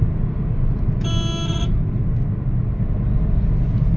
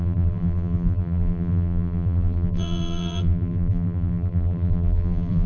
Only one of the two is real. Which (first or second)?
first